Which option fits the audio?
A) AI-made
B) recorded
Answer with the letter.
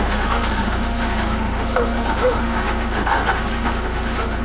A